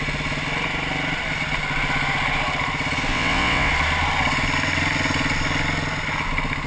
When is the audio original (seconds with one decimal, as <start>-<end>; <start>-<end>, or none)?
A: 0.0-3.1; 3.7-6.7